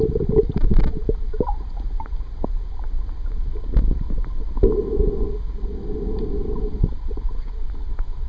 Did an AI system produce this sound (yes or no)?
no